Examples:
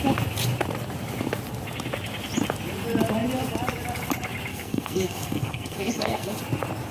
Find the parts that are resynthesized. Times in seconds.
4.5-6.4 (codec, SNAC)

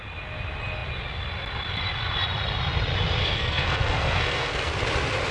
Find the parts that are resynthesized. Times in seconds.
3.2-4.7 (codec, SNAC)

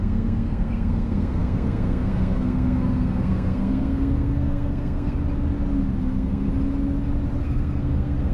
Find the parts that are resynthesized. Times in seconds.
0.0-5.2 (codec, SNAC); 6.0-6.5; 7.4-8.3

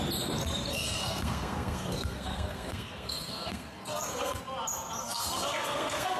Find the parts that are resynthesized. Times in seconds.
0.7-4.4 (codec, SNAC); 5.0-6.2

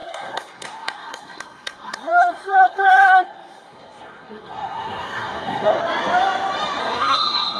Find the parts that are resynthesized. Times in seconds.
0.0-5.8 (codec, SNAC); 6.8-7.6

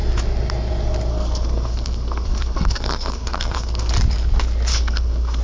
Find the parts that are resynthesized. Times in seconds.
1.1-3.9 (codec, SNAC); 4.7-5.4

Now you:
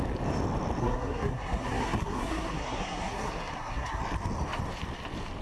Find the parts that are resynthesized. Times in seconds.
0.8-4.0 (codec, SNAC)

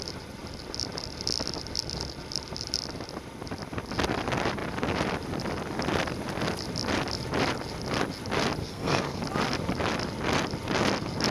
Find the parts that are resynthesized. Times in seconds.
8.6-9.2 (codec, SNAC)